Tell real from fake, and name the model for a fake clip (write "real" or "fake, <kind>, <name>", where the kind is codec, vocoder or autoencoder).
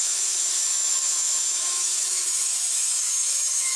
fake, autoencoder, DAC-VAE